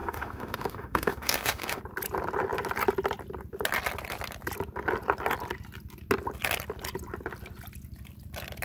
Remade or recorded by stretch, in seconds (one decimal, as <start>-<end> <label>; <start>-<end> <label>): 0.0-1.8 remade; 1.8-8.6 recorded